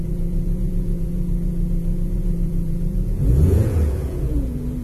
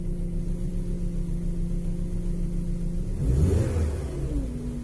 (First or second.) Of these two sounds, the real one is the second